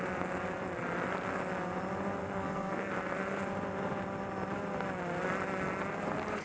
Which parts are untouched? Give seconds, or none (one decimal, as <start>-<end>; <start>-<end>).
0.0-2.2; 2.9-6.4